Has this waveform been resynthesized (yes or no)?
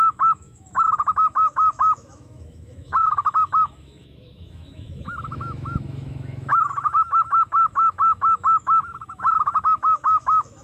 yes